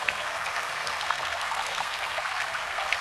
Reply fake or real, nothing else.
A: fake